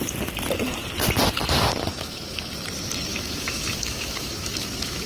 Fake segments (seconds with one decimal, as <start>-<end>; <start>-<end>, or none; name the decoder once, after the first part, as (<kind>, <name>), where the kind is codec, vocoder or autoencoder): 1.9-2.5 (autoencoder, DAC-VAE); 3.1-5.1

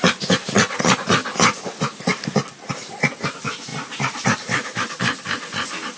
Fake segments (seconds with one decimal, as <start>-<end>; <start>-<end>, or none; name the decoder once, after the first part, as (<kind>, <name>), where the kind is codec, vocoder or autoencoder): 3.7-5.2 (vocoder, BigVGAN v2)